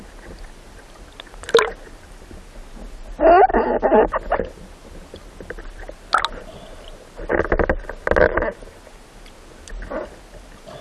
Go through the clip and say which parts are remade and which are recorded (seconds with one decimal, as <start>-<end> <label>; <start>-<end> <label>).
0.0-10.8 recorded